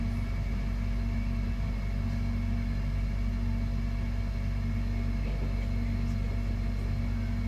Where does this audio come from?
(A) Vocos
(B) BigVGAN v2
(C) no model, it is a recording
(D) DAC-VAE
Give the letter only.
C